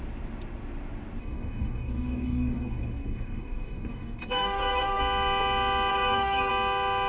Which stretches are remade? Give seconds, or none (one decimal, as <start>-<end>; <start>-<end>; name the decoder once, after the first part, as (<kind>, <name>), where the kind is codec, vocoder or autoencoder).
1.2-5.0 (codec, DAC); 5.9-6.5